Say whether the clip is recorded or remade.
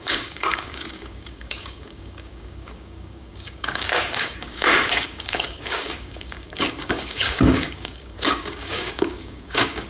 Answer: remade